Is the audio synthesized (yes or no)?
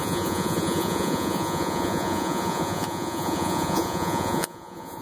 yes